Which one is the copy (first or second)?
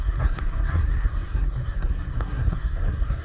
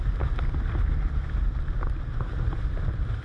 first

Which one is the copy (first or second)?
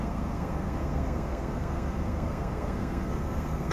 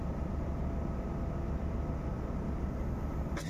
first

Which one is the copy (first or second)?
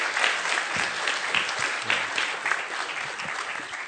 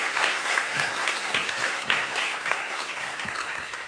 second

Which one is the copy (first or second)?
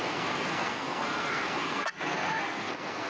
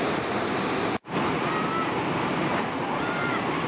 first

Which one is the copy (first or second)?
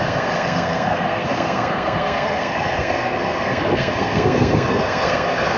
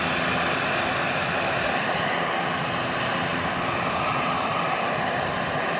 first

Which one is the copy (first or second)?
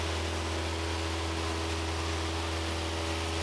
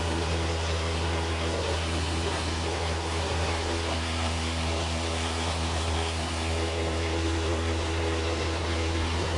second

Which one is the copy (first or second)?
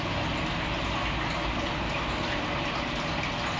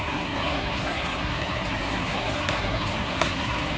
second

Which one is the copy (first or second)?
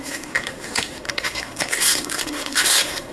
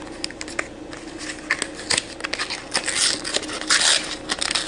first